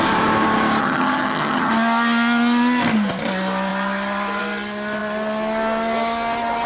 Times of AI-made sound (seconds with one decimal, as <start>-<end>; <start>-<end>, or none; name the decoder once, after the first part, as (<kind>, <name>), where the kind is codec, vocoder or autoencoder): 0.8-1.7 (vocoder, HiFi-GAN)